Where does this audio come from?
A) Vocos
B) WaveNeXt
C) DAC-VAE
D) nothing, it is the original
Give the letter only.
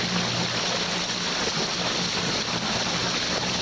D